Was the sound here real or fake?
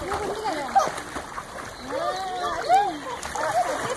real